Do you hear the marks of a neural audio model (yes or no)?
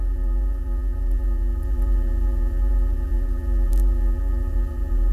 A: yes